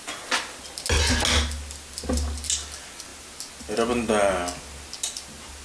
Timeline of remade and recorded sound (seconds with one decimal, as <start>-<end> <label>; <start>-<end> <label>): 0.0-5.6 recorded